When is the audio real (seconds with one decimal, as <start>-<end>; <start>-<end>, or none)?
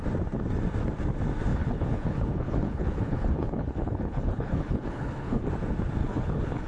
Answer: 0.0-1.5; 5.5-6.0